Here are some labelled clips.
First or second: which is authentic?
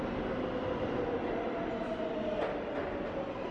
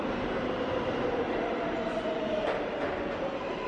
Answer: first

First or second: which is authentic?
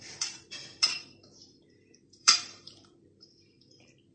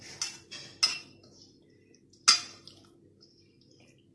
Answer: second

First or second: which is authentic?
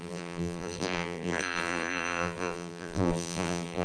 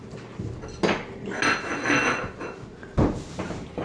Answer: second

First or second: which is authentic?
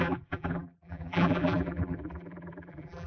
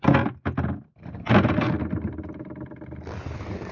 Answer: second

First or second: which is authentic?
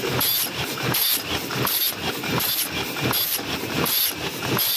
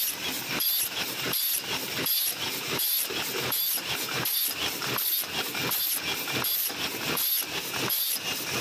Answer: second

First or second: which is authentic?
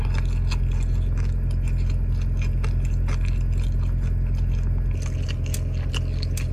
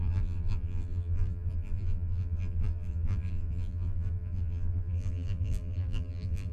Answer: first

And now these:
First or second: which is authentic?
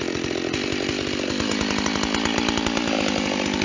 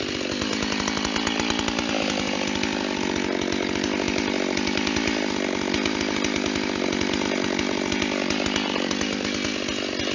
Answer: second